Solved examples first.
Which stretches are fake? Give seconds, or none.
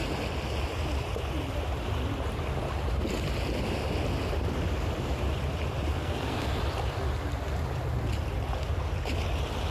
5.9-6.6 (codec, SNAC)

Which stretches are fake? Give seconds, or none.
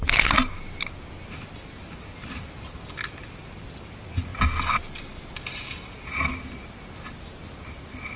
none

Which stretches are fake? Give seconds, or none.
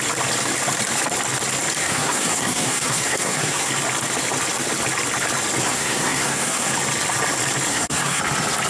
1.8-3.7 (codec, SNAC); 5.6-6.7; 7.7-8.2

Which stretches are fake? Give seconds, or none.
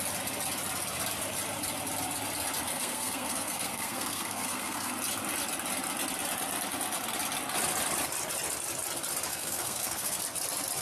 2.7-4.9 (codec, SNAC); 9.3-10.2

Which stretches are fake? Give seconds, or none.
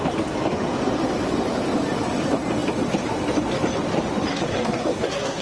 4.3-5.4 (codec, SNAC)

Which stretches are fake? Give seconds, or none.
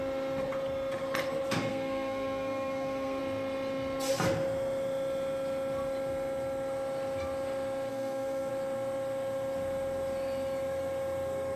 1.7-3.2 (codec, SNAC); 7.9-8.5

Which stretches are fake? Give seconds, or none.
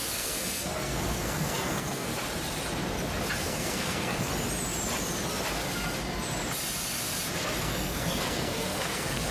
0.0-2.1 (codec, SNAC); 3.4-4.3; 7.6-9.3